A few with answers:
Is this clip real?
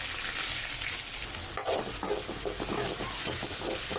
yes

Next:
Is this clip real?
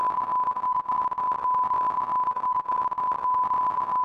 yes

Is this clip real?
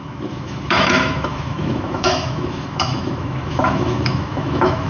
no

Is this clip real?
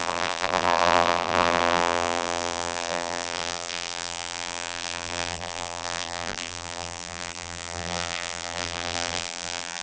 no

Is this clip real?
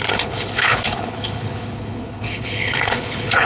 no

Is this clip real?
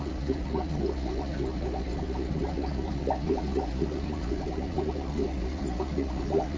no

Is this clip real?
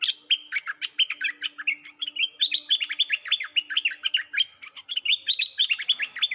yes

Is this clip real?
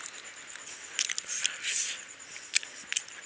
yes